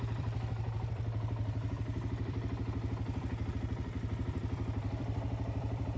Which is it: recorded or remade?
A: remade